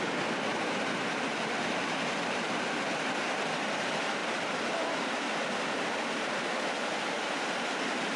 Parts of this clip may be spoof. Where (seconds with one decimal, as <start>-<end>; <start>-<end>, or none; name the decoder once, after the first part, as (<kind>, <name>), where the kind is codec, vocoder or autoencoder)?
4.2-6.7 (vocoder, BigVGAN v2)